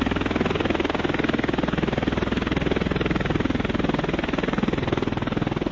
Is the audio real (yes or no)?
yes